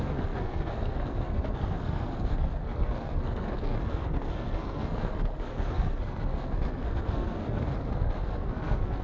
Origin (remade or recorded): remade